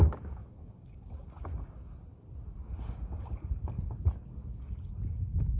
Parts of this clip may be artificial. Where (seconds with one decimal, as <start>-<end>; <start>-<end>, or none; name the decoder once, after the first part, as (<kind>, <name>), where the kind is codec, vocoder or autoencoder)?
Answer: 0.0-1.5 (codec, DAC); 4.9-5.6